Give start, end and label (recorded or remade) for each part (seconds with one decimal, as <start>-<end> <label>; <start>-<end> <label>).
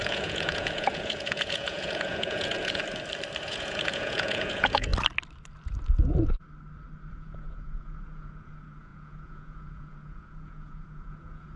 0.0-2.8 remade; 2.8-3.4 recorded; 3.4-4.9 remade; 4.9-7.1 recorded; 7.1-11.6 remade